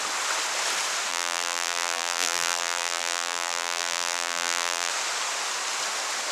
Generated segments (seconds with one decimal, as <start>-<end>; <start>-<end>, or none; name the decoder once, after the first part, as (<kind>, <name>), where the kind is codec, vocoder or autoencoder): 1.1-4.9 (vocoder, BigVGAN v2)

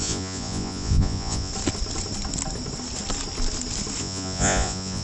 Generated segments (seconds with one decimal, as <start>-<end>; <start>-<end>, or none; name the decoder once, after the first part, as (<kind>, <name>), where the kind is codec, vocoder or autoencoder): 0.0-1.5 (vocoder, Vocos); 4.0-5.0

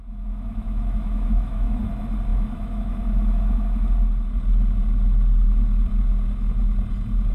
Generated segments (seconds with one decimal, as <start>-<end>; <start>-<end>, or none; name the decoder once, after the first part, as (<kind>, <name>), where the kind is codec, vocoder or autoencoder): 0.0-1.8 (autoencoder, DAC-VAE); 2.3-3.6